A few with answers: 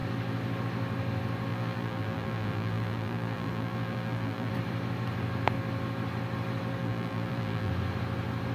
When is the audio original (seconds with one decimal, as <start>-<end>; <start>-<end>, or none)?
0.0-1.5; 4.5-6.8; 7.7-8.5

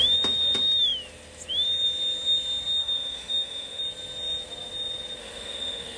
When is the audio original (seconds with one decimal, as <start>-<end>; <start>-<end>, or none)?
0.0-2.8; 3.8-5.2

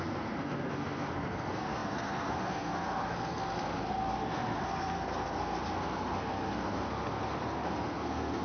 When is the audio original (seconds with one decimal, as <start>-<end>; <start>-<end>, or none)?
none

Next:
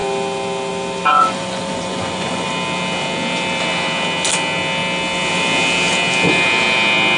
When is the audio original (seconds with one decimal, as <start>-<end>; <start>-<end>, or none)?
0.0-1.1; 2.5-7.2

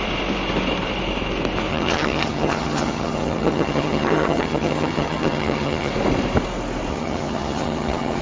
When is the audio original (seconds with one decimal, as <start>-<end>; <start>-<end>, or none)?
0.0-1.7; 5.9-6.9

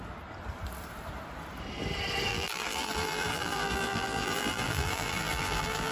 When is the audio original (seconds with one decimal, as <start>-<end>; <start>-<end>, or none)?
0.0-2.3